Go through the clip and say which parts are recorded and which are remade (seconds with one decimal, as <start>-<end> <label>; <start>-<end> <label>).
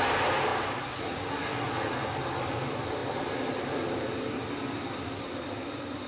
0.0-6.1 recorded